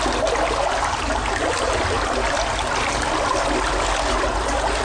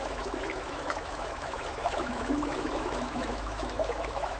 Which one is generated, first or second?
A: second